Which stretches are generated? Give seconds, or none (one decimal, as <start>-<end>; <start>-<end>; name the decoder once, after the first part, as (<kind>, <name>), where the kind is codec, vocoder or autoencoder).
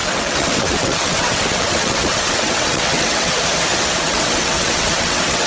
0.0-3.3 (vocoder, WaveNeXt); 3.7-5.5